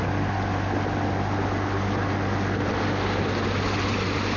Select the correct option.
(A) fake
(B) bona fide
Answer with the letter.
B